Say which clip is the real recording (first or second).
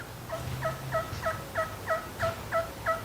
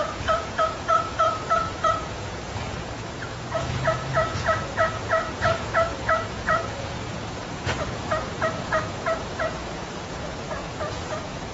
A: first